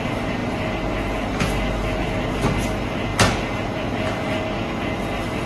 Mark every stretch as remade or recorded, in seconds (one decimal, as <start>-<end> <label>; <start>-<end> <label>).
0.0-5.5 recorded